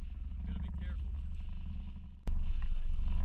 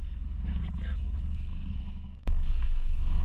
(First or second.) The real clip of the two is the first